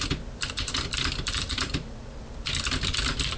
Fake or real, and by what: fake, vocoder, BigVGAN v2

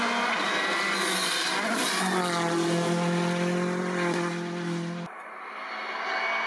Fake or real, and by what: real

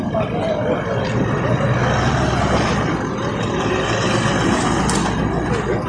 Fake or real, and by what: real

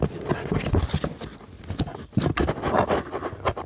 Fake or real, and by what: real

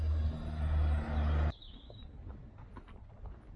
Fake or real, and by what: real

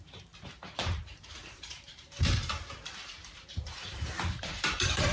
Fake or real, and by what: fake, vocoder, BigVGAN v2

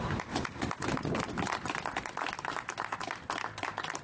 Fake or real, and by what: fake, vocoder, BigVGAN v2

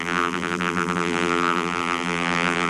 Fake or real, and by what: fake, vocoder, BigVGAN v2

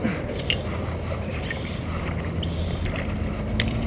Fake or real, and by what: real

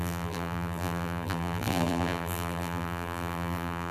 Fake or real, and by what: fake, vocoder, BigVGAN v2